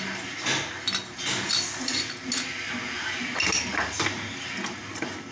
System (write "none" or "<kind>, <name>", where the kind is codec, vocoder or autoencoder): none